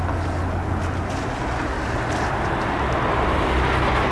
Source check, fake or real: real